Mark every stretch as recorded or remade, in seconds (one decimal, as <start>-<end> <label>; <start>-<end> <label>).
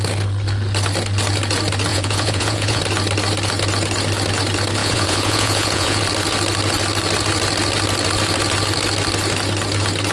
0.0-1.9 recorded; 1.9-2.8 remade; 2.8-4.8 recorded; 4.8-6.0 remade; 6.0-10.1 recorded